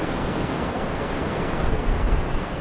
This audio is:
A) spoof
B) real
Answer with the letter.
A